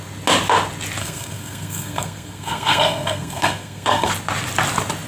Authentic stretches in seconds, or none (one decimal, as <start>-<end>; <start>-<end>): 0.0-1.0; 4.1-5.1